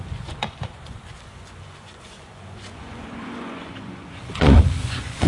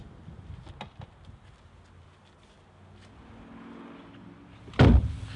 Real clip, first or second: second